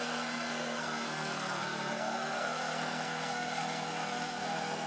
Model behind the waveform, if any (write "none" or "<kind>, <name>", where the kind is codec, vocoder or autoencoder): codec, SNAC